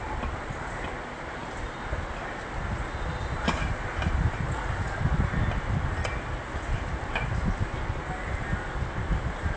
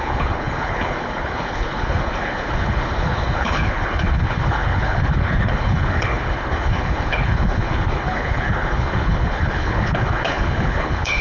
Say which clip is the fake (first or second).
second